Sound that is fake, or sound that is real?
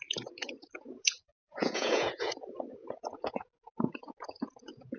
fake